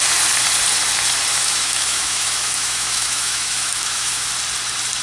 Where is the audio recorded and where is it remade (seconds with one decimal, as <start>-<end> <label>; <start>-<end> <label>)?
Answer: 0.0-1.3 recorded; 1.3-4.3 remade; 4.3-5.0 recorded